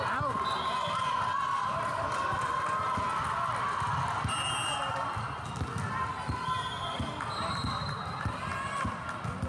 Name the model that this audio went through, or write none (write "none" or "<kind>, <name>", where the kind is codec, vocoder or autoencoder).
none